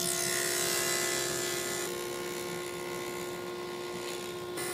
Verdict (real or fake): real